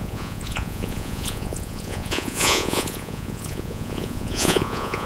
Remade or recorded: remade